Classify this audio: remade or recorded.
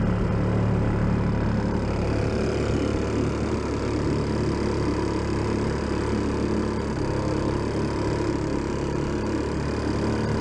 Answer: recorded